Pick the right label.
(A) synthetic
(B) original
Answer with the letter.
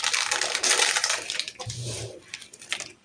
B